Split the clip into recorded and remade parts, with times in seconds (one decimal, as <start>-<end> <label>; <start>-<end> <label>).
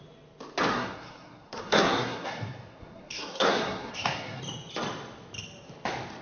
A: 0.0-0.7 recorded; 0.7-4.4 remade; 4.4-6.2 recorded